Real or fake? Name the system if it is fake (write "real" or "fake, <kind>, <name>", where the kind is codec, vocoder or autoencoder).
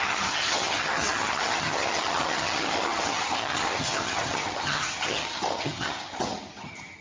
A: fake, vocoder, HiFi-GAN